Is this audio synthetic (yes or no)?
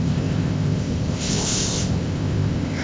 yes